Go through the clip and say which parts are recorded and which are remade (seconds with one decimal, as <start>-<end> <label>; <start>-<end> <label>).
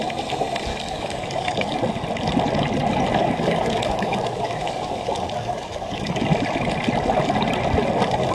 0.0-0.7 recorded; 0.7-1.8 remade; 1.8-3.2 recorded; 3.2-6.2 remade; 6.2-8.3 recorded